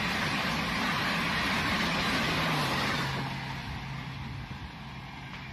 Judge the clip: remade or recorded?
recorded